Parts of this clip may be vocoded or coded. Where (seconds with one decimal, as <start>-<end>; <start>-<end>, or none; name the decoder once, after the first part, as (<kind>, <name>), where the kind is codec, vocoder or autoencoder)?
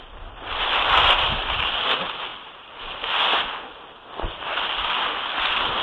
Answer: 2.3-5.8 (vocoder, BigVGAN v2)